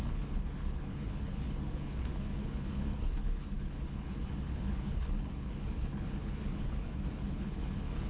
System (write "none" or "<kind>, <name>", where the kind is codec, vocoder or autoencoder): codec, HILCodec